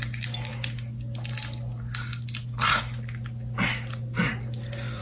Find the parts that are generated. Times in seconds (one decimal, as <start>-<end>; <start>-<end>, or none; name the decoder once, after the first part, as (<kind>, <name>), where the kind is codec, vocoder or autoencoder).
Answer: none